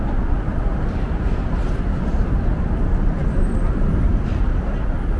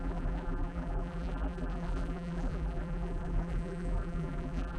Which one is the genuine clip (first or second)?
first